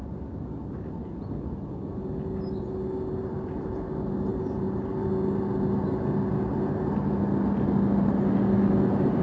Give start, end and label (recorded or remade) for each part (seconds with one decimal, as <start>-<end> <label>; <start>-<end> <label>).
0.0-4.3 recorded; 4.3-5.1 remade; 5.1-9.2 recorded